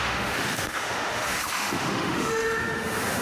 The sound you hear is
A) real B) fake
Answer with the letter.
B